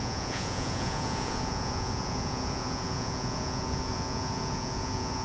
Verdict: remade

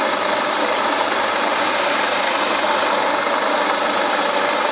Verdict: recorded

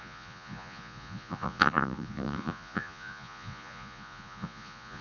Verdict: remade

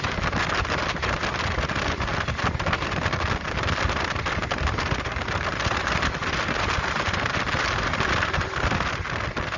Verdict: recorded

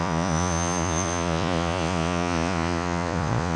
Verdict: remade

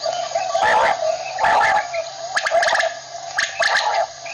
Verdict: recorded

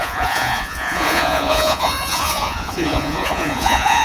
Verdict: remade